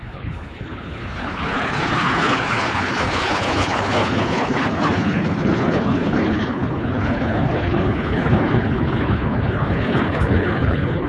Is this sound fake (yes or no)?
yes